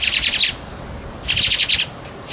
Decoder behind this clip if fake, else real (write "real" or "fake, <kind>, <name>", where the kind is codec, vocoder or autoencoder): real